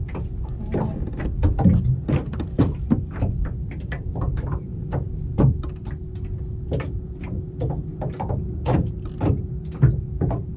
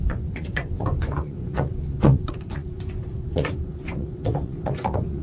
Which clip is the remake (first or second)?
second